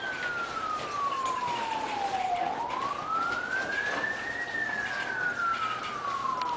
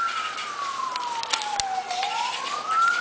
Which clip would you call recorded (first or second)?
first